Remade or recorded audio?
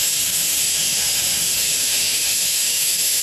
remade